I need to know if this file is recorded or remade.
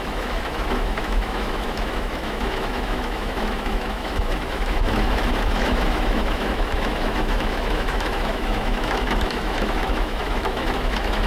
remade